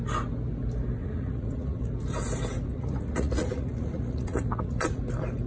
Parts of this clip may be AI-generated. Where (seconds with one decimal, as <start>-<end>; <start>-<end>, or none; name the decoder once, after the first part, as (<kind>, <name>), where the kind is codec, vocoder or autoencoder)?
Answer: 1.0-1.9 (vocoder, Vocos); 2.7-5.0